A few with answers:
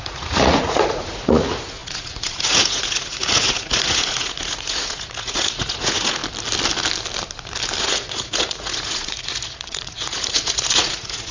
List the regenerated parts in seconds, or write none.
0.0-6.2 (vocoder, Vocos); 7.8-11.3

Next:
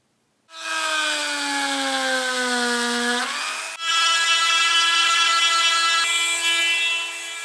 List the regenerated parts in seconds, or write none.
none

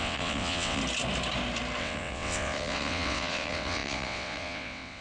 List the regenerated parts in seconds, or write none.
0.0-0.8 (vocoder, WaveNeXt); 1.8-5.0